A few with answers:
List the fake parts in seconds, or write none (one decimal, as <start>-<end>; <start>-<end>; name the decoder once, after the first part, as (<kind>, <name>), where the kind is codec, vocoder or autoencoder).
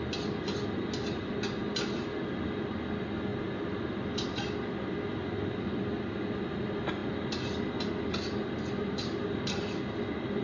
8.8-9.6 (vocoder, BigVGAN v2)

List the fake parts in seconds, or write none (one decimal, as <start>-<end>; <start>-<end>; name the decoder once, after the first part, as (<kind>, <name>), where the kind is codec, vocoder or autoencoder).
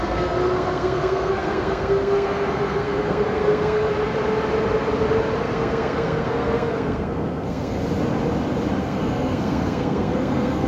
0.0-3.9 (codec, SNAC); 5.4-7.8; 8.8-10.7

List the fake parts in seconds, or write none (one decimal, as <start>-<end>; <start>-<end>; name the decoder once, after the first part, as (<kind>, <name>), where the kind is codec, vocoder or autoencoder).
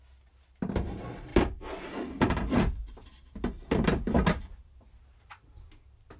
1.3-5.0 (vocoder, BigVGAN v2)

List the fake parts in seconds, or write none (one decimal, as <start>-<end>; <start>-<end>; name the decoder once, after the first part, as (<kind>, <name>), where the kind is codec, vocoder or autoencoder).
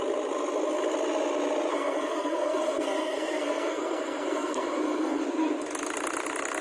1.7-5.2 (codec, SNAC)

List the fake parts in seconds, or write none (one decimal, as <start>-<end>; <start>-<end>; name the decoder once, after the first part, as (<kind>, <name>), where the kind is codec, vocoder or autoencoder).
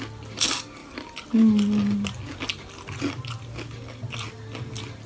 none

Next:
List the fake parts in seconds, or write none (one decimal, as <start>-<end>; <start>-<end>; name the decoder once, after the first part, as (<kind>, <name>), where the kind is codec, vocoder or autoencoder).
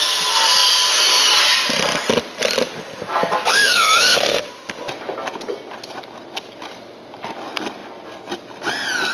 3.5-4.4 (autoencoder, DAC-VAE)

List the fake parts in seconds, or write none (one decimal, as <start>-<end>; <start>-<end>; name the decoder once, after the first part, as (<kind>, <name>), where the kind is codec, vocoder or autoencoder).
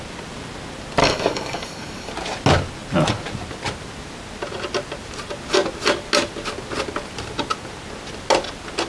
1.0-2.1 (codec, DAC)